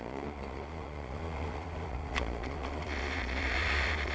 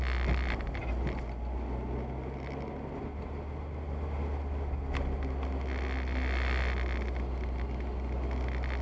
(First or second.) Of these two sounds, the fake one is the first